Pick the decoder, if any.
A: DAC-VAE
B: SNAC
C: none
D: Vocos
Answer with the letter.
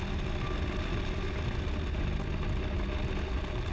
C